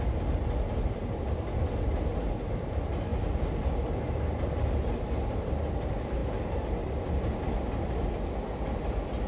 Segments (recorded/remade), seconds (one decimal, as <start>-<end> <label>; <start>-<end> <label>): 0.0-3.1 remade; 3.1-5.8 recorded; 5.8-9.3 remade